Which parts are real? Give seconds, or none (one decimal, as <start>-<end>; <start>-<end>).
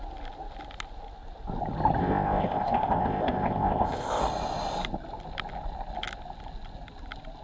0.0-2.0; 4.2-7.4